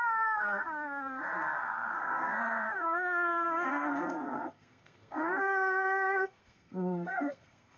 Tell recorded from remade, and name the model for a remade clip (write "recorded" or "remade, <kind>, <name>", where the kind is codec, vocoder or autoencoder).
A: remade, codec, SNAC